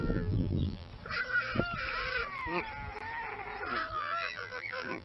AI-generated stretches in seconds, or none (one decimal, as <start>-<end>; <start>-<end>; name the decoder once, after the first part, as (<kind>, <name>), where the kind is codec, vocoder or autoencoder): 0.0-0.9 (vocoder, BigVGAN v2); 3.9-5.0